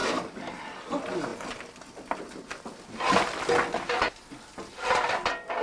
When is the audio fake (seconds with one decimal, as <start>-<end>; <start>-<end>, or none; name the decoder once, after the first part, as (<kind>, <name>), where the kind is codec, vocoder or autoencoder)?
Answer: none